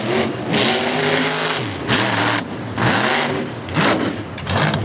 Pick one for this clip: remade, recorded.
recorded